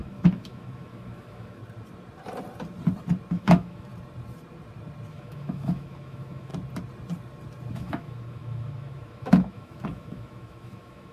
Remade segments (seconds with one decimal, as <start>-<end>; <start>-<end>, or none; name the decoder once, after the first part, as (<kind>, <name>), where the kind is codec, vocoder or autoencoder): 0.0-1.6 (autoencoder, DAC-VAE); 3.3-3.9; 5.1-6.5; 7.7-11.1